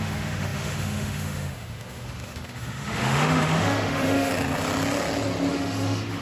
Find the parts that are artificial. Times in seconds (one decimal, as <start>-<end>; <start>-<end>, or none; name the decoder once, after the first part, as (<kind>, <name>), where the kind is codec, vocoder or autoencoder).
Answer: 0.0-4.3 (autoencoder, DAC-VAE); 5.5-6.2